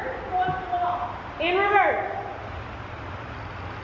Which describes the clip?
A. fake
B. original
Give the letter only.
B